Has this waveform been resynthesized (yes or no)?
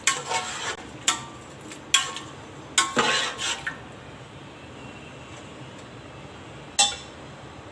no